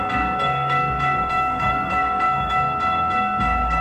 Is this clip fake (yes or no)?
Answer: yes